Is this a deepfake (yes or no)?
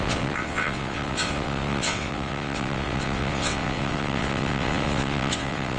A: yes